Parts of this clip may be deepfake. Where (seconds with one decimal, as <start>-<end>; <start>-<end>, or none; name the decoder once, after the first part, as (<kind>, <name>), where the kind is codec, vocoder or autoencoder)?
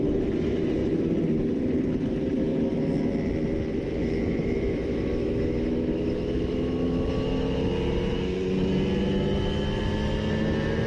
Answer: 4.0-7.1 (autoencoder, DAC-VAE)